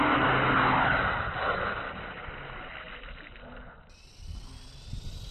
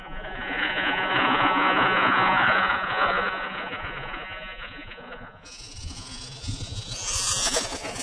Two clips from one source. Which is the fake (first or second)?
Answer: second